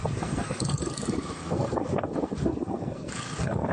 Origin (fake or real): fake